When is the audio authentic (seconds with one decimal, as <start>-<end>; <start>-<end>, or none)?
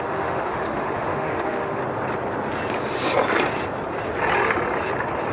1.8-5.3